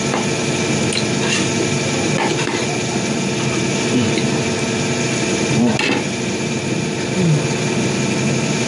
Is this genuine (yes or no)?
yes